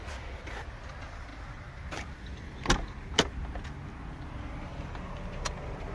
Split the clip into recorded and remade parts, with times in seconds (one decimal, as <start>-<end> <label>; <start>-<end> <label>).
0.0-5.9 recorded